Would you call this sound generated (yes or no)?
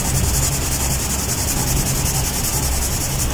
no